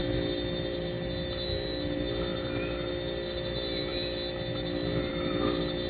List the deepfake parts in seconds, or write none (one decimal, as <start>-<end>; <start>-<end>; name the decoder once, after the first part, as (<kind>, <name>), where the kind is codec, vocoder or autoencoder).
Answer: none